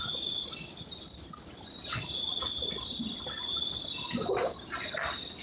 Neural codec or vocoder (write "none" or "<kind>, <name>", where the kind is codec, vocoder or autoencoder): none